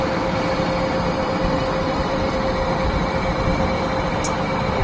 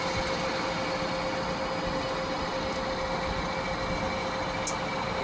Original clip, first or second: second